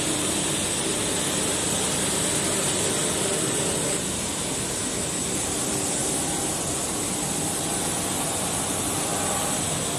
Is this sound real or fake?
real